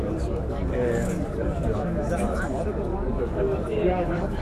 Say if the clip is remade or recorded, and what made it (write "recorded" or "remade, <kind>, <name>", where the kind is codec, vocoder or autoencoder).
remade, codec, DAC